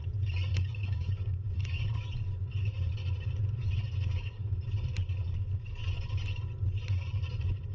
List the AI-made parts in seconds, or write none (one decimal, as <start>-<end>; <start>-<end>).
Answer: 0.5-1.9; 4.1-4.6